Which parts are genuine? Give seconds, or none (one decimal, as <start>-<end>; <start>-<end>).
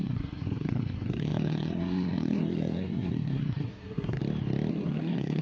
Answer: 4.2-4.7